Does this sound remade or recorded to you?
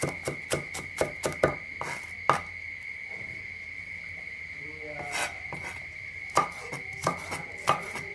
recorded